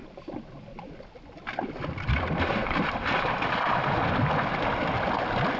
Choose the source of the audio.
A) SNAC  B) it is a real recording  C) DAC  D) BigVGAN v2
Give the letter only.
B